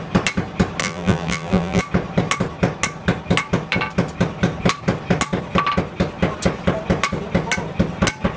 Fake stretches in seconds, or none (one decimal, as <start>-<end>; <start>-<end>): 0.8-1.8